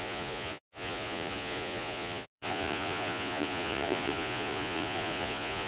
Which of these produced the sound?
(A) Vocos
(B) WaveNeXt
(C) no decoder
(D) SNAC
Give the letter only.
A